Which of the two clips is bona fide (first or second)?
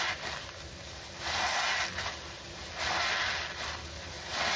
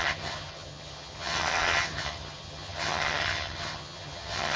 first